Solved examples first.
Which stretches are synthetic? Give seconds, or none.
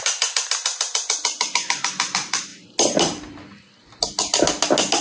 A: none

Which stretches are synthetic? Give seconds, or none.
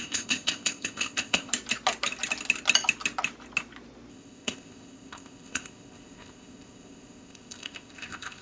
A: 0.0-1.5; 4.1-8.4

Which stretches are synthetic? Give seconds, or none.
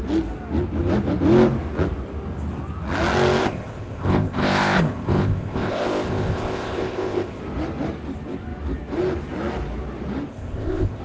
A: 3.4-7.4; 10.3-11.0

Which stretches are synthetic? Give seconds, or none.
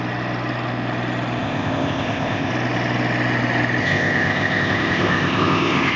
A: 1.4-2.5; 3.8-6.0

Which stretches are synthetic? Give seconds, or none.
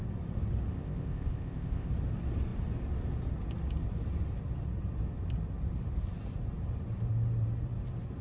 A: 0.7-1.9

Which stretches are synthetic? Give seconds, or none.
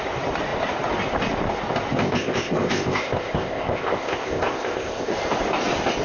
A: 2.0-5.1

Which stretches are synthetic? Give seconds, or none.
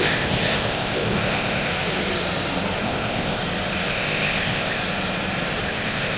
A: 0.0-1.7; 2.8-3.4; 3.9-4.8; 5.6-6.2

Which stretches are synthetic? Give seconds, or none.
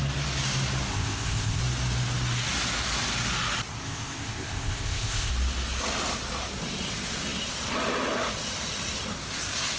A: 0.9-1.6; 3.7-5.3